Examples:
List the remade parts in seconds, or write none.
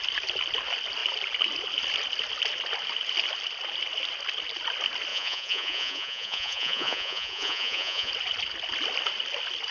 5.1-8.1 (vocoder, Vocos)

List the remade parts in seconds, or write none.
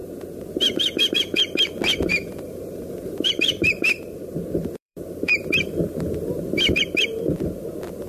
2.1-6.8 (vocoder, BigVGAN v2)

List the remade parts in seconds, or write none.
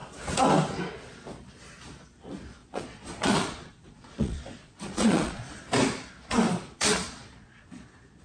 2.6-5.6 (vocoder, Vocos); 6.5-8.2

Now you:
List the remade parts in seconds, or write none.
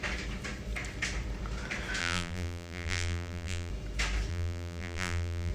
2.0-3.7 (vocoder, BigVGAN v2); 4.3-5.5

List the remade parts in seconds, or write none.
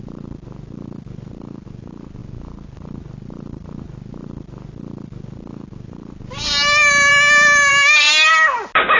none